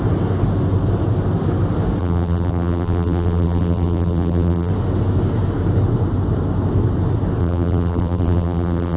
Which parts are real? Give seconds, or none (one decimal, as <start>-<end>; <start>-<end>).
0.0-2.0; 4.7-7.4